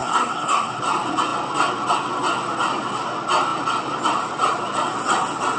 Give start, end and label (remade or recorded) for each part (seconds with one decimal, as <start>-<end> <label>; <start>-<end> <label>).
0.0-0.8 remade; 0.8-5.6 recorded